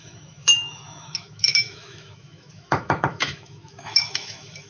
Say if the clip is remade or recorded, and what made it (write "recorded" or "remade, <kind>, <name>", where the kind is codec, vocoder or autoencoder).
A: remade, autoencoder, DAC-VAE